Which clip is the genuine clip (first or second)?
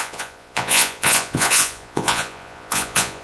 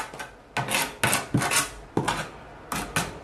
second